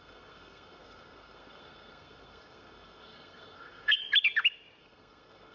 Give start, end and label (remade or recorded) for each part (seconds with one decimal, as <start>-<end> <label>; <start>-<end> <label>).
0.0-4.0 remade; 4.0-4.8 recorded; 4.8-5.5 remade